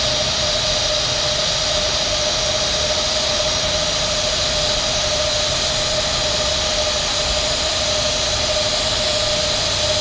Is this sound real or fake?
real